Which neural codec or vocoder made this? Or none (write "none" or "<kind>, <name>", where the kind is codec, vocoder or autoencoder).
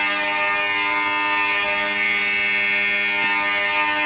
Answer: none